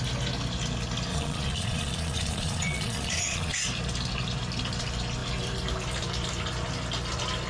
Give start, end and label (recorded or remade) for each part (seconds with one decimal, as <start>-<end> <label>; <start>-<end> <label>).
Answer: 0.0-1.1 recorded; 1.1-3.6 remade; 3.6-7.5 recorded